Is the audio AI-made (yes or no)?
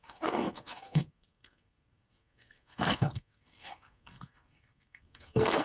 yes